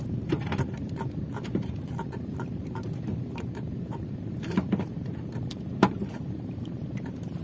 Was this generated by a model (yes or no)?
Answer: yes